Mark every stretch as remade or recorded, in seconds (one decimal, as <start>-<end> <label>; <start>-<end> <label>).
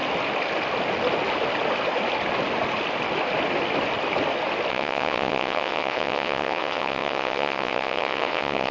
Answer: 0.0-4.7 recorded; 4.7-8.7 remade